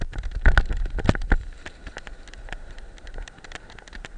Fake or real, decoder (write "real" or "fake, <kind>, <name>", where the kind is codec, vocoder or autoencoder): real